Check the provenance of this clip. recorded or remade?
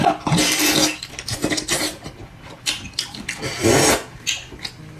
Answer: recorded